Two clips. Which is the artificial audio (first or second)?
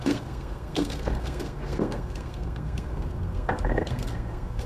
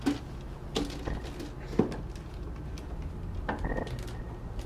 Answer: first